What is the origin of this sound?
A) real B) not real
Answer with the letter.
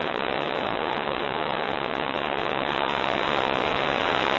B